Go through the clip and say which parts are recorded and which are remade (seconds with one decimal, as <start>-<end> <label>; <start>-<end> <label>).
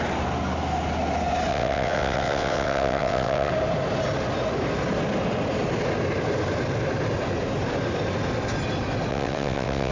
0.0-1.5 recorded; 1.5-3.5 remade; 3.5-9.1 recorded; 9.1-9.9 remade